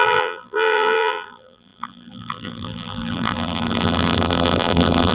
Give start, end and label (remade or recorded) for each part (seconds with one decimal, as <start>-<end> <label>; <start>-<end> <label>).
0.0-5.1 remade